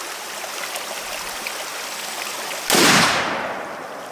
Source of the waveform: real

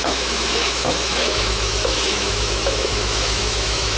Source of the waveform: fake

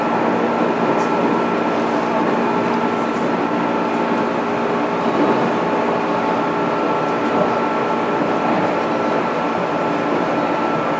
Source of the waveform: real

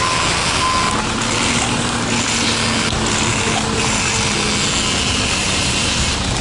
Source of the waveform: real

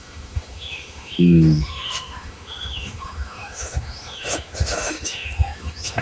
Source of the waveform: fake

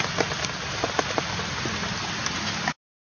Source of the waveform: real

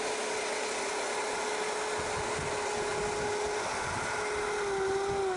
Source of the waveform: real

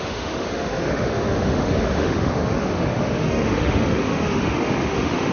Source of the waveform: fake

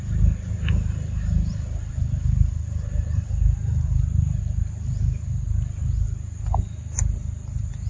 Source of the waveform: real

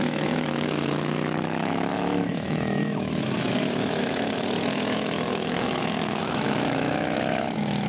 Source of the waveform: fake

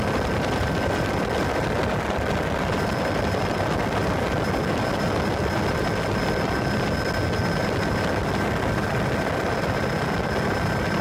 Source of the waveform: real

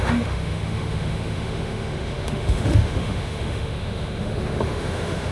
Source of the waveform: fake